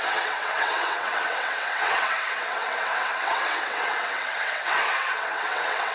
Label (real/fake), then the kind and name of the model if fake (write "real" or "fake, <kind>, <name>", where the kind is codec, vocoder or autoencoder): fake, vocoder, WaveNeXt